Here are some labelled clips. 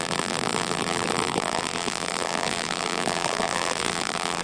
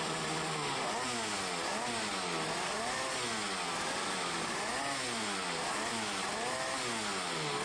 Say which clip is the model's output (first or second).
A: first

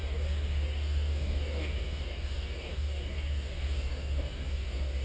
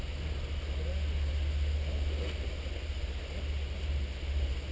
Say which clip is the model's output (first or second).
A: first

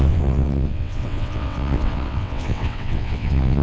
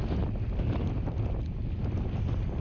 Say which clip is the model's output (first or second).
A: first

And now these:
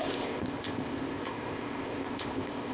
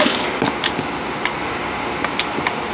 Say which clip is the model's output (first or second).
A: first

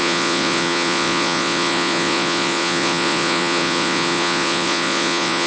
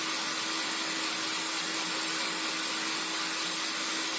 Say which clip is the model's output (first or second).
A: first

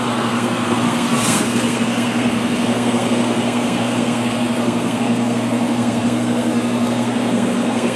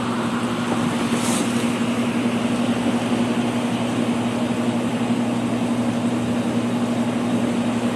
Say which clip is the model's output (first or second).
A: first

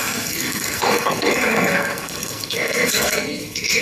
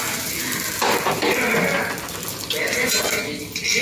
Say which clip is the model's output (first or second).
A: first